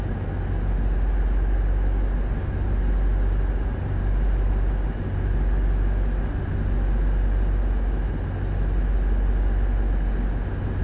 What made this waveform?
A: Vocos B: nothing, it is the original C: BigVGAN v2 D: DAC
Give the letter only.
B